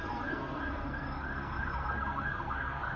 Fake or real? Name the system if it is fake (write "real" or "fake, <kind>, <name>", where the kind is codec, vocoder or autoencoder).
fake, codec, SNAC